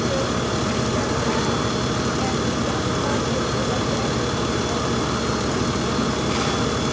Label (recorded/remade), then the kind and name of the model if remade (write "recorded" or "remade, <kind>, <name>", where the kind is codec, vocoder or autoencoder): recorded